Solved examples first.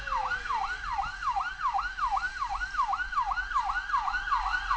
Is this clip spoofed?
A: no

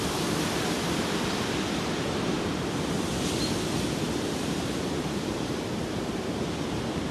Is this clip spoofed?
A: yes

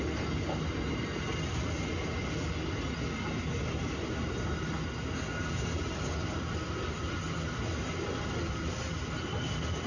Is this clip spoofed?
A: no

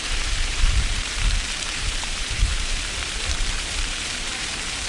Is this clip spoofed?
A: yes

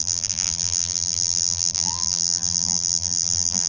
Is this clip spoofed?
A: yes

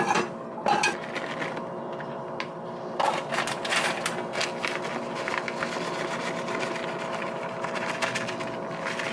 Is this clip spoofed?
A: no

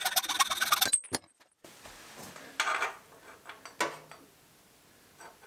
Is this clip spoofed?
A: no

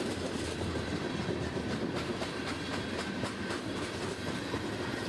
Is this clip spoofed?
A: yes